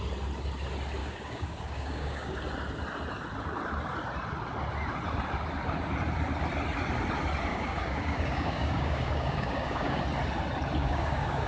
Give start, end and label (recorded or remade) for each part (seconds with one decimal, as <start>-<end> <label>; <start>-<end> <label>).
0.0-1.0 recorded; 1.0-2.4 remade; 2.4-7.5 recorded; 7.5-10.0 remade; 10.0-10.8 recorded; 10.8-11.5 remade